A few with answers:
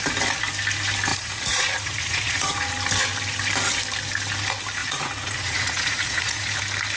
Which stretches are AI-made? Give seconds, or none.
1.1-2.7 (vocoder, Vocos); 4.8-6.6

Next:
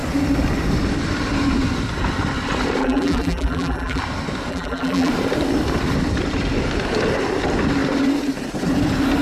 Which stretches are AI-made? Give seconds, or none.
2.8-4.0 (vocoder, BigVGAN v2); 4.5-5.1

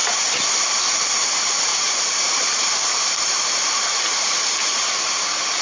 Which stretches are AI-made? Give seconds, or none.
1.7-5.1 (vocoder, BigVGAN v2)

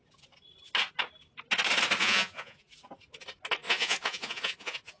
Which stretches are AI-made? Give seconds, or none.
2.0-2.7 (vocoder, Vocos); 3.6-5.0

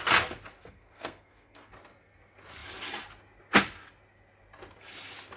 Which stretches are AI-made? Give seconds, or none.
0.6-1.7 (codec, SNAC)

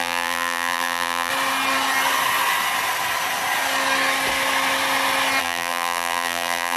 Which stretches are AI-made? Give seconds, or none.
0.0-1.3 (vocoder, BigVGAN v2); 5.4-6.8

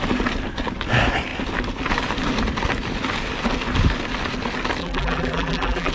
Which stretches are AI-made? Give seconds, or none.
4.8-5.9 (vocoder, BigVGAN v2)